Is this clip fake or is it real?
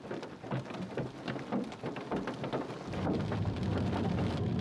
real